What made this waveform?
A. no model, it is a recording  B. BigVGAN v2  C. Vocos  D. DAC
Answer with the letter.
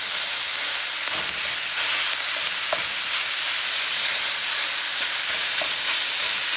A